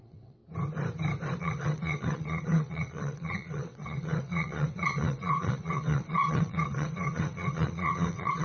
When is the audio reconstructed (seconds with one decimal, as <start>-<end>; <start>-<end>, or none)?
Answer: 0.0-0.4; 1.4-8.4